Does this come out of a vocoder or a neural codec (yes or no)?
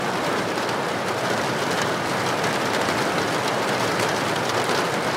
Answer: yes